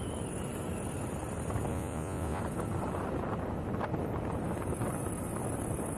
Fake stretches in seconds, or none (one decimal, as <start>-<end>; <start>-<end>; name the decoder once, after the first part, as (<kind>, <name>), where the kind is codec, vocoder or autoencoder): 1.7-2.4 (vocoder, Vocos)